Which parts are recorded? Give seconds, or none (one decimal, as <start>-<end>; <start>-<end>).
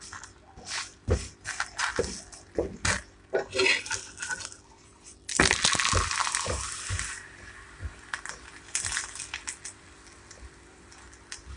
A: 0.0-11.6